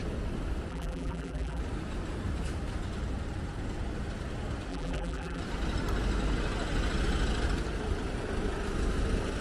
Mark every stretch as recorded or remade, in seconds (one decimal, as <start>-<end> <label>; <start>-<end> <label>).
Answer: 0.0-0.7 recorded; 0.7-1.6 remade; 1.6-4.7 recorded; 4.7-5.4 remade; 5.4-9.4 recorded